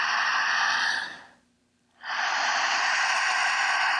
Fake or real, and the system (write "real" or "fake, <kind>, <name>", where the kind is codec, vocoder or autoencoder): real